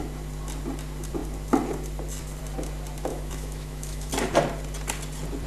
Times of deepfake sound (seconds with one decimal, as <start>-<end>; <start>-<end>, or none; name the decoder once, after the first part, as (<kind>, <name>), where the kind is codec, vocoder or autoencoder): 3.1-4.1 (autoencoder, DAC-VAE)